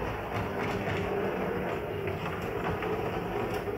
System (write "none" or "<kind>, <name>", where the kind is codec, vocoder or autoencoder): none